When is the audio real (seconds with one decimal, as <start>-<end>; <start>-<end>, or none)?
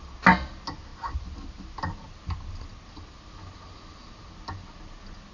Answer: 0.0-5.3